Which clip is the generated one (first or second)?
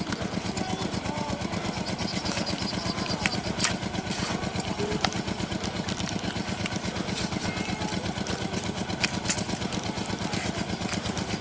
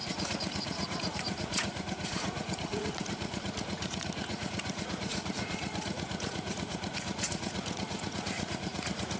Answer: second